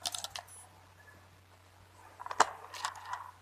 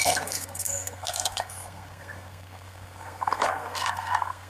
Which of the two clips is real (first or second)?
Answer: first